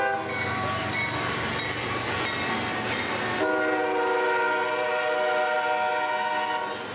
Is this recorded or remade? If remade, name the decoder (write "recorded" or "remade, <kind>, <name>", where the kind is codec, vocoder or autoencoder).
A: recorded